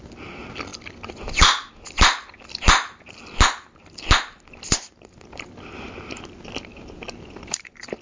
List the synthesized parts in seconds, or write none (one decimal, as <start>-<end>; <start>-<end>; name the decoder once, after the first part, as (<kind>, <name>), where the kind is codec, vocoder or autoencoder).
none